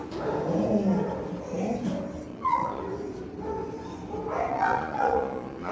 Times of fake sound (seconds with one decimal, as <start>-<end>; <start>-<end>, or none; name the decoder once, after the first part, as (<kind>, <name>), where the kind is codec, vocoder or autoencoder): 2.3-2.8 (vocoder, Vocos); 4.5-5.7